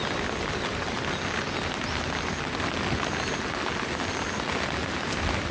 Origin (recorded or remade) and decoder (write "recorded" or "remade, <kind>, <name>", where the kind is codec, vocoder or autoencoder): recorded